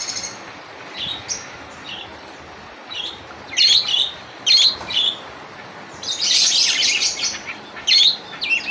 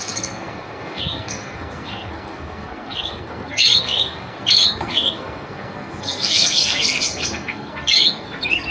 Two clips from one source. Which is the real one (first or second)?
first